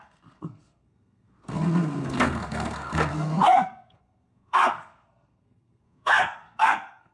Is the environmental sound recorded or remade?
remade